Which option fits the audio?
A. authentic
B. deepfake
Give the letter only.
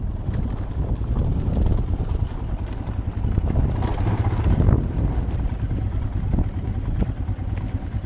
A